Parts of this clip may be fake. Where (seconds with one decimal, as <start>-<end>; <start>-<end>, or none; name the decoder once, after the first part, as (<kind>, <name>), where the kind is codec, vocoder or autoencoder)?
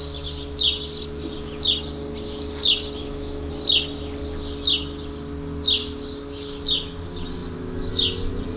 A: 3.0-3.5 (autoencoder, DAC-VAE)